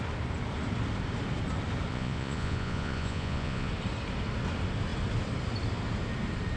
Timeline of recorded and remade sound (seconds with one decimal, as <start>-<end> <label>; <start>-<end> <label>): 0.0-1.9 recorded; 1.9-3.7 remade; 3.7-6.6 recorded